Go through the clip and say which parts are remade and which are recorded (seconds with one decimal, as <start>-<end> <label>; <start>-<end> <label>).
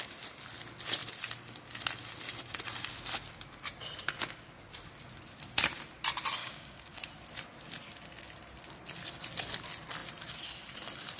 0.0-6.4 recorded; 6.4-7.0 remade; 7.0-11.2 recorded